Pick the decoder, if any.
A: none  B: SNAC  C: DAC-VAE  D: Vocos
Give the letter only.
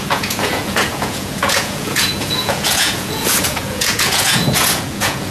D